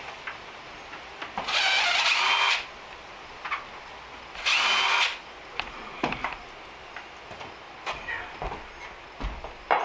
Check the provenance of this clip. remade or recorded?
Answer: recorded